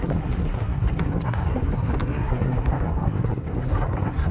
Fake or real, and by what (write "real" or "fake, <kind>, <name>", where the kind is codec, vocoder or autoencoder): fake, codec, SNAC